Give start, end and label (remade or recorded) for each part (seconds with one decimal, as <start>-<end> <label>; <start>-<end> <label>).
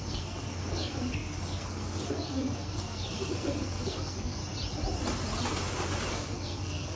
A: 0.0-4.4 remade; 4.4-6.1 recorded; 6.1-7.0 remade